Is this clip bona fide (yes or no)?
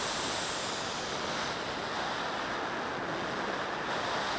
yes